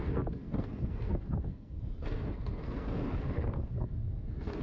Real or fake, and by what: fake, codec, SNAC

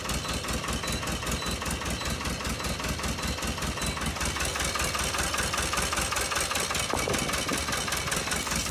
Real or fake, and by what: real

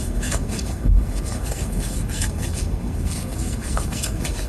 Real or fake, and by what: fake, codec, SNAC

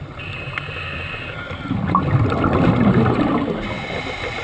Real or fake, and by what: real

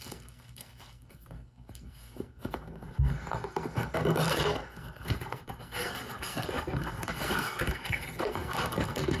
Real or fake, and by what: fake, codec, SNAC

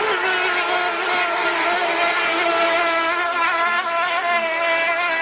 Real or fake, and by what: real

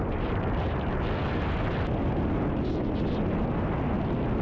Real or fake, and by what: real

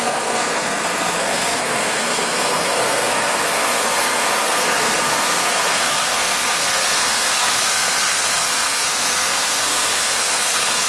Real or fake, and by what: fake, codec, SNAC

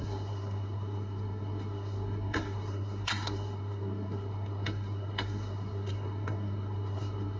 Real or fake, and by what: fake, codec, SNAC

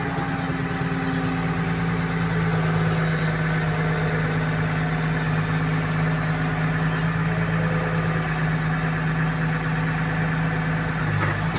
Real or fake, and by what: real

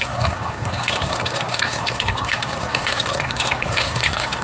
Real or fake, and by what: fake, codec, SNAC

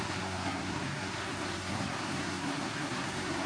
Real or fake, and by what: fake, codec, SNAC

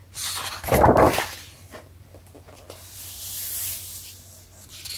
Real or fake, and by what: real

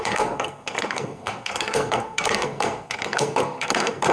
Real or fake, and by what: fake, codec, SNAC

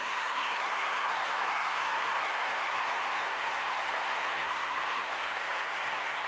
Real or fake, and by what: fake, codec, SNAC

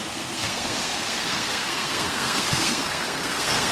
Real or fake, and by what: fake, codec, SNAC